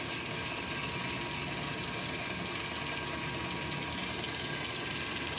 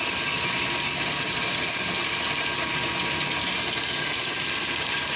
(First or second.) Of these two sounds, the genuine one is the first